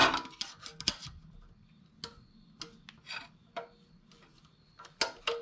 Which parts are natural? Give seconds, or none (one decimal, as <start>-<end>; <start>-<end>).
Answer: 0.0-5.4

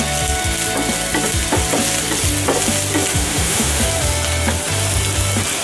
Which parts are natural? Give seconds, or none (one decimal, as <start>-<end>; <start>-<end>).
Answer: 0.0-3.1; 3.8-5.6

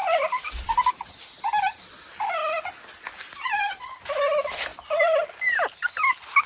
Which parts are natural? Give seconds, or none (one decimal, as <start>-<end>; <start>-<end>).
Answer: 0.9-3.6; 4.2-4.7; 5.7-6.5

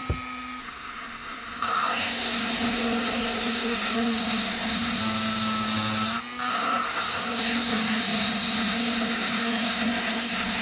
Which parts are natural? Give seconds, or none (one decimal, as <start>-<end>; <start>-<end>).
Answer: 0.0-0.6; 5.0-6.5

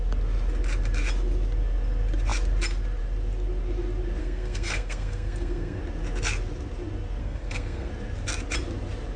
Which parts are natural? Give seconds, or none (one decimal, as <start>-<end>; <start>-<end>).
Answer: 0.0-4.2; 5.8-7.2; 7.9-9.2

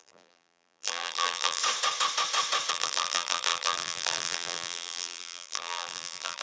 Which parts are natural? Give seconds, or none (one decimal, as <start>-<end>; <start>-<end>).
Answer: 1.6-2.7

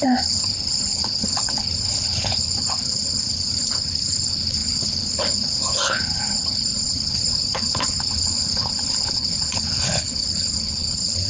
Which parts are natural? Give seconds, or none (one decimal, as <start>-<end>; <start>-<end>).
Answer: none